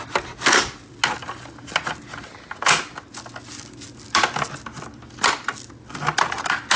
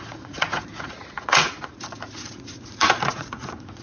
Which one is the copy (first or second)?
second